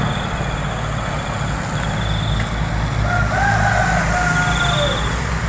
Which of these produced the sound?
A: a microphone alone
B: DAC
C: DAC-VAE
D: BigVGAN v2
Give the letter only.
A